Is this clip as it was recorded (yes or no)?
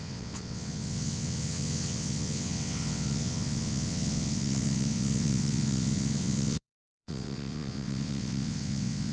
no